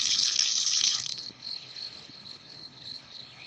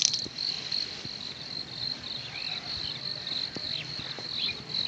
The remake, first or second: first